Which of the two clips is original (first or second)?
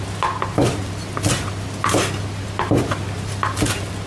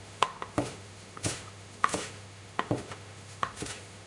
first